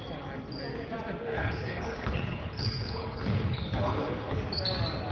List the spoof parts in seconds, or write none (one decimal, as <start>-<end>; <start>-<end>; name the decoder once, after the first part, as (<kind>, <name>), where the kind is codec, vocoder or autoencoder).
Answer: 1.3-4.4 (codec, HILCodec)